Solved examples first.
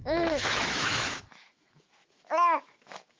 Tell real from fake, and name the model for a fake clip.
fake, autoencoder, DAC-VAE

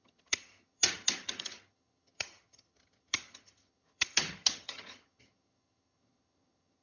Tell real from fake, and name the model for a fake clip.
fake, vocoder, HiFi-GAN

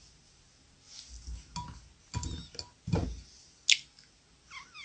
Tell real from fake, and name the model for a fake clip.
real